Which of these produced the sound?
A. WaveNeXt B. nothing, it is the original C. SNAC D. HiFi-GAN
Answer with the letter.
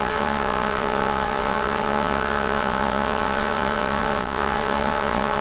A